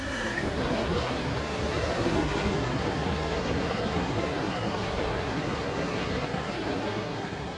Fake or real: fake